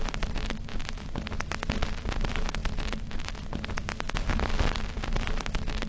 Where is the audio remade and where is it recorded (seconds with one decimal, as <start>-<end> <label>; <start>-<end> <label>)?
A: 0.0-5.9 recorded